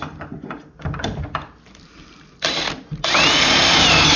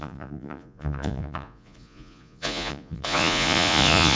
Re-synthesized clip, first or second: second